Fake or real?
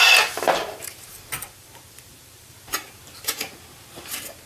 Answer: fake